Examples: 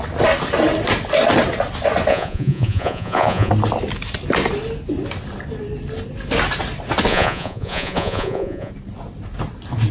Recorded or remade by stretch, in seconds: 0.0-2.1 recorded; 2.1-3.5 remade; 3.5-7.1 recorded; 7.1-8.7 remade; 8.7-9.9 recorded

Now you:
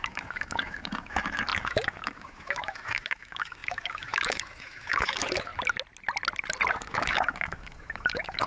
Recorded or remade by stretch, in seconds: 0.0-5.5 remade; 5.5-6.7 recorded; 6.7-8.5 remade

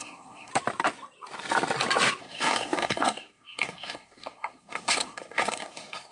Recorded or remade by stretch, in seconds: 0.0-0.5 remade; 0.5-2.2 recorded; 2.2-6.1 remade

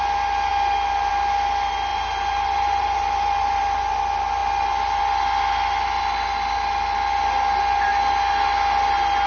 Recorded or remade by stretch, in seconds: 0.0-1.9 recorded; 1.9-4.0 remade; 4.0-9.3 recorded

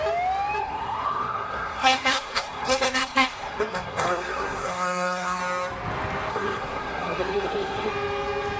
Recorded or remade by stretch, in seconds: 0.0-0.6 recorded; 0.6-5.4 remade; 5.4-6.3 recorded; 6.3-7.9 remade; 7.9-8.6 recorded

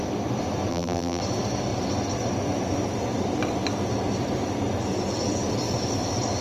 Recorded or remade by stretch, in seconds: 0.0-0.7 recorded; 0.7-1.2 remade; 1.2-6.4 recorded

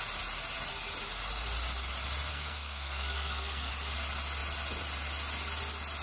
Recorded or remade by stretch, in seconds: 0.0-2.3 recorded; 2.3-3.7 remade; 3.7-6.0 recorded